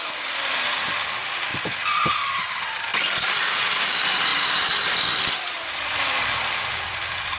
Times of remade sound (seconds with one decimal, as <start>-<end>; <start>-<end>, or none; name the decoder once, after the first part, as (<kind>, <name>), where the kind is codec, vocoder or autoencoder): none